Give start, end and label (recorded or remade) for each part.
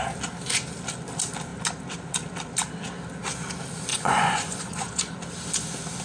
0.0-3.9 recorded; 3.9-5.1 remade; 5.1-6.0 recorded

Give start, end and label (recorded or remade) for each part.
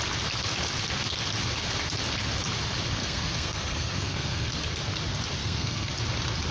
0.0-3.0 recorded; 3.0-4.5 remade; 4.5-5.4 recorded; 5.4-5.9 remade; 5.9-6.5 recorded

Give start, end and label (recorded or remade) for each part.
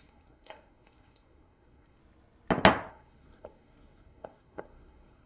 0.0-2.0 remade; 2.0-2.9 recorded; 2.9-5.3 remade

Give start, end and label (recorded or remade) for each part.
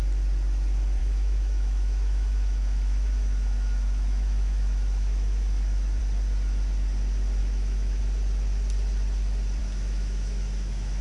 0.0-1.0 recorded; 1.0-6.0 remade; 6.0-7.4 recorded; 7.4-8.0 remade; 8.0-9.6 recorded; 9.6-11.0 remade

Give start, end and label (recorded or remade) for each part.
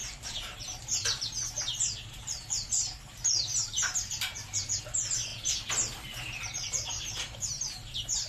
0.0-5.3 remade; 5.3-6.4 recorded; 6.4-8.3 remade